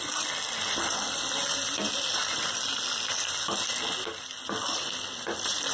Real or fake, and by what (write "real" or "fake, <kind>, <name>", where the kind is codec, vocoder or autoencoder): real